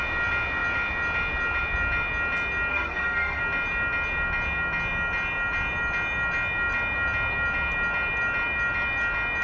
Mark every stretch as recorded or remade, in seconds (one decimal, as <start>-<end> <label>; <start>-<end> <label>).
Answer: 0.0-2.7 recorded; 2.7-3.4 remade; 3.4-9.4 recorded